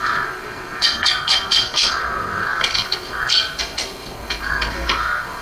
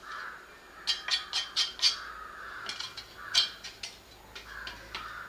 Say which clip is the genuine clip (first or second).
second